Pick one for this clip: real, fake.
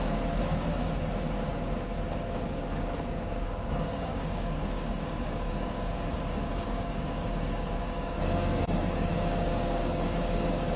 fake